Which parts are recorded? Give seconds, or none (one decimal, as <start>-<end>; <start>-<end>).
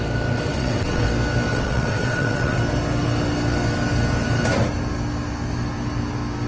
0.0-0.5; 1.1-1.5; 2.6-6.5